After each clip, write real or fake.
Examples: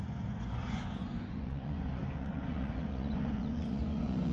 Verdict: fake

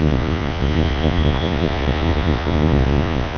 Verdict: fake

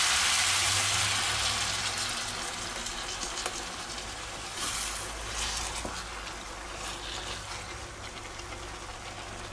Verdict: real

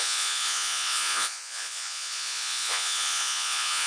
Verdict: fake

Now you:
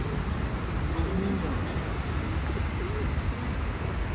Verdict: real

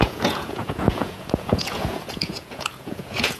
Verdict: fake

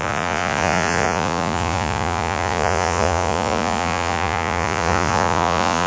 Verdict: fake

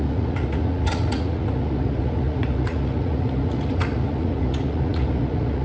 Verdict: fake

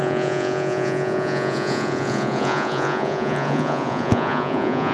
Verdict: fake